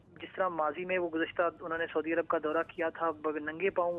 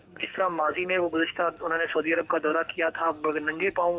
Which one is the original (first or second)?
first